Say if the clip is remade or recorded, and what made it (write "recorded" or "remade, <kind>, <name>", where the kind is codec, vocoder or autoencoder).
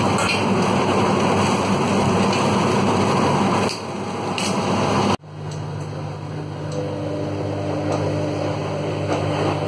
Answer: recorded